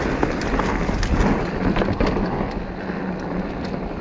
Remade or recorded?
recorded